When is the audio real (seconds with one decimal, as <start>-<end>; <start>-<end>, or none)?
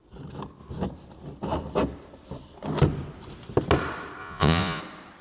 0.0-4.2; 4.8-5.2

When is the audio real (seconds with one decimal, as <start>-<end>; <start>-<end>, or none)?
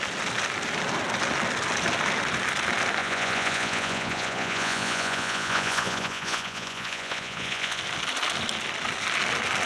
0.0-3.0; 7.8-9.7